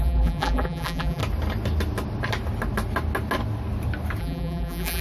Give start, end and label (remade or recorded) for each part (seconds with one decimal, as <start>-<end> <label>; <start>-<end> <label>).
0.0-1.2 remade; 1.2-4.2 recorded; 4.2-5.0 remade